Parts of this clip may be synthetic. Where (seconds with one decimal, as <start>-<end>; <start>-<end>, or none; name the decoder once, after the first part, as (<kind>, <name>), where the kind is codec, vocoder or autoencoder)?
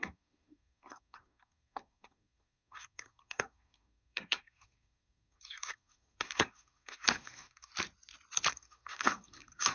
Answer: 0.0-7.7 (codec, SNAC); 8.5-9.7